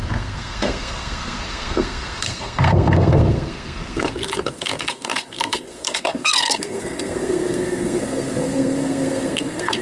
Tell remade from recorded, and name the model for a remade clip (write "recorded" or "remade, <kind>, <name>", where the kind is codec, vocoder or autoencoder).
remade, codec, SNAC